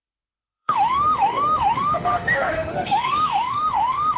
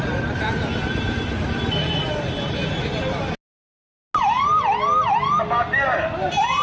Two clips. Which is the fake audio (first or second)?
first